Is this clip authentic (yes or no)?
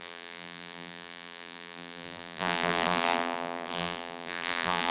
no